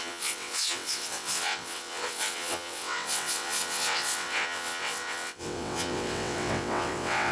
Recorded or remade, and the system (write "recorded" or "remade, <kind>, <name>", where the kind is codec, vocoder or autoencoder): remade, vocoder, WaveNeXt